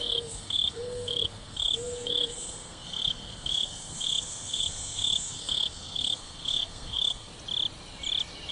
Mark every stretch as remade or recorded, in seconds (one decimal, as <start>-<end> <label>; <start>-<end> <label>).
0.0-7.3 remade; 7.3-8.5 recorded